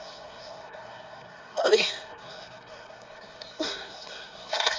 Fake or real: fake